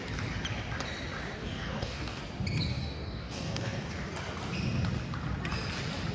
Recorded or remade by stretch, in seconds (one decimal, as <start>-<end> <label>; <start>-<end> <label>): 0.0-1.4 recorded; 1.4-2.2 remade; 2.2-2.7 recorded; 2.7-3.9 remade; 3.9-6.1 recorded